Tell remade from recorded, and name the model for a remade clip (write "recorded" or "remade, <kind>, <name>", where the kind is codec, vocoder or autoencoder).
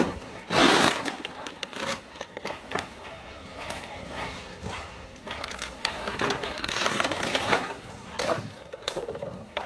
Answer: remade, codec, SNAC